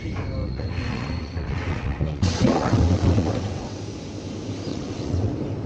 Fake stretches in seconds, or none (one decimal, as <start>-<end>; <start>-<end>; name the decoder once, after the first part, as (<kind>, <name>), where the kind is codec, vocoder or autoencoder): 0.4-3.8 (vocoder, WaveNeXt); 4.7-5.3